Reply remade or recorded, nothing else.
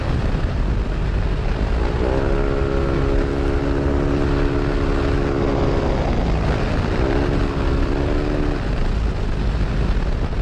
recorded